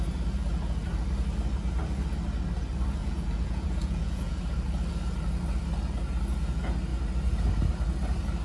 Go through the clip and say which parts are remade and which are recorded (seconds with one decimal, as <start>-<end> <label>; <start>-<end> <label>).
0.0-3.0 recorded; 3.0-4.4 remade; 4.4-8.4 recorded